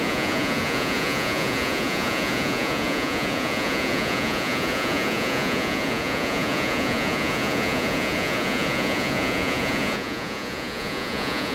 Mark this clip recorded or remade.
remade